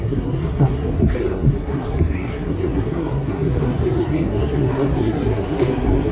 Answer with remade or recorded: remade